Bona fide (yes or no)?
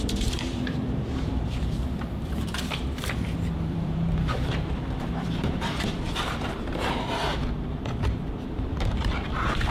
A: no